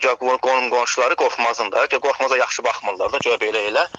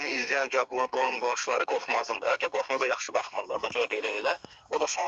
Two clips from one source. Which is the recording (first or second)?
first